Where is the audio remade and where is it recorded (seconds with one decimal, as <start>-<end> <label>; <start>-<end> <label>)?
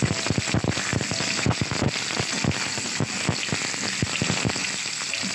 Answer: 0.0-0.9 remade; 0.9-4.1 recorded; 4.1-5.3 remade